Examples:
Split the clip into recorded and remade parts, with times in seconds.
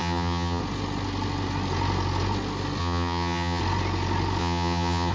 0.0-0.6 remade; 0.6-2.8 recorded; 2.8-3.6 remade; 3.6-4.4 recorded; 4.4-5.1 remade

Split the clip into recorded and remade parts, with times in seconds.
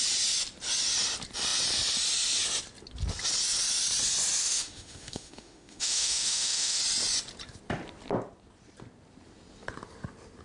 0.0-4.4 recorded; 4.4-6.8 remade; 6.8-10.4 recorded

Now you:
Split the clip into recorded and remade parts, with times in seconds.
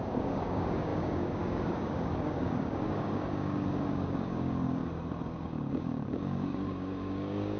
0.0-4.8 remade; 4.8-5.4 recorded; 5.4-7.6 remade